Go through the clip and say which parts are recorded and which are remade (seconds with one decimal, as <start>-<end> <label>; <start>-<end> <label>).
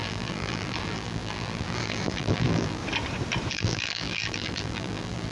0.0-2.8 remade; 2.8-3.5 recorded; 3.5-5.3 remade